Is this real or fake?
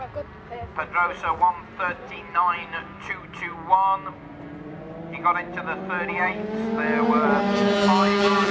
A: real